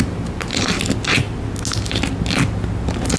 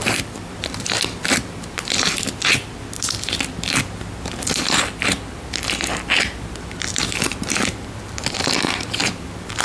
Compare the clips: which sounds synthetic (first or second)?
second